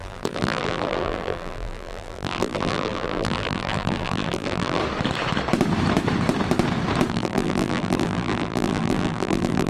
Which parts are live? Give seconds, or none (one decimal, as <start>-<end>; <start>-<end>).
4.8-7.1